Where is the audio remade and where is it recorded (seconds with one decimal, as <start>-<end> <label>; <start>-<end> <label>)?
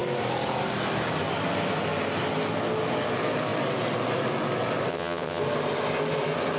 0.0-4.9 recorded; 4.9-5.4 remade; 5.4-6.6 recorded